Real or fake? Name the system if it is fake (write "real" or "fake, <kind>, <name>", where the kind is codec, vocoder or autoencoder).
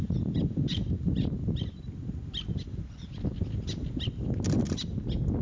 real